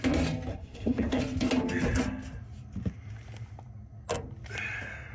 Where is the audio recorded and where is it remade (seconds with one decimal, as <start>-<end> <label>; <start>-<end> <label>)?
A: 0.0-0.5 recorded; 0.5-1.2 remade; 1.2-5.1 recorded